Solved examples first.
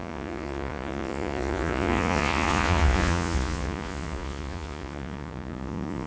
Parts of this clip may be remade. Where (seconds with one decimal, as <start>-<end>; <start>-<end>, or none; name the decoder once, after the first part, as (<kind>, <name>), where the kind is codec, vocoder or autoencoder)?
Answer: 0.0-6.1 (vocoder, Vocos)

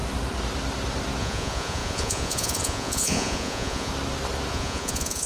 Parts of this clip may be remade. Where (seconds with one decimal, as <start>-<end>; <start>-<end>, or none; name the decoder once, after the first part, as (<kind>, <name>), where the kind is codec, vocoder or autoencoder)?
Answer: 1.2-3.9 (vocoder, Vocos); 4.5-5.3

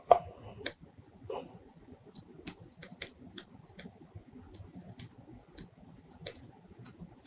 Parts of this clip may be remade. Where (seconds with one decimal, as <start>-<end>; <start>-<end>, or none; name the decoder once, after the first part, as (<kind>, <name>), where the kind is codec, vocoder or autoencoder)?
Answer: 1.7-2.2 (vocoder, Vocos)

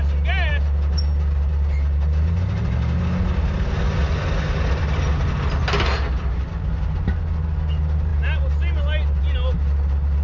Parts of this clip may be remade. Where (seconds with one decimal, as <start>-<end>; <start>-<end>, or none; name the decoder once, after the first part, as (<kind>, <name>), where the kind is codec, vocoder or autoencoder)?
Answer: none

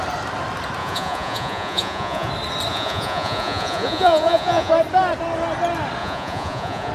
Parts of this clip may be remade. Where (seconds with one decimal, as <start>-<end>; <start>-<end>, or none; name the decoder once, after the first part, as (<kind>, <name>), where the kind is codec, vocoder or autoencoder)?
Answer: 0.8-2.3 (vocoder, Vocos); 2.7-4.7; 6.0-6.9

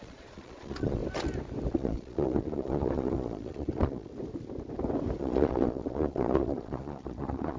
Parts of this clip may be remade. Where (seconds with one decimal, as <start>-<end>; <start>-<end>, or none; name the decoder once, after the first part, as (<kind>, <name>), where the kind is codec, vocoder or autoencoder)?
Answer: 0.0-1.0 (vocoder, Vocos); 1.7-4.1; 5.2-7.6